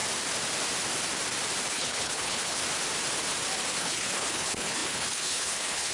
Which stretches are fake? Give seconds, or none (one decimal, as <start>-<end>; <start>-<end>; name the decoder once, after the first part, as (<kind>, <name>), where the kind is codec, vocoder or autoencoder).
1.7-2.6 (codec, HILCodec); 3.8-5.9